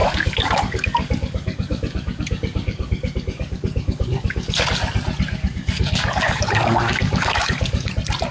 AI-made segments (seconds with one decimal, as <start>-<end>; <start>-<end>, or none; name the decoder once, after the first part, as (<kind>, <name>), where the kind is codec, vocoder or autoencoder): 0.0-4.6 (codec, DAC); 5.3-7.9